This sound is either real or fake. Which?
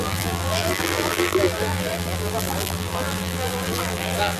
fake